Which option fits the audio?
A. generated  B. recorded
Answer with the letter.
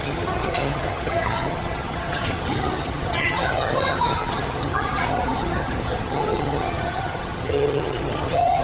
A